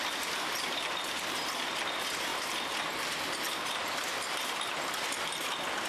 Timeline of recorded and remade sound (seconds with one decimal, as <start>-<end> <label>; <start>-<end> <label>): 0.0-5.9 recorded